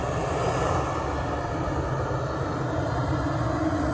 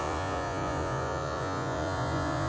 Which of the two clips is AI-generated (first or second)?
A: second